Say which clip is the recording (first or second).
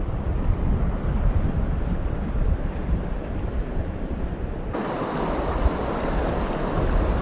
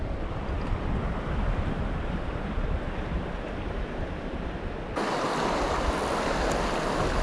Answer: second